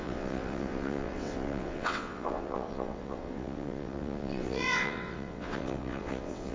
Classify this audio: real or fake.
fake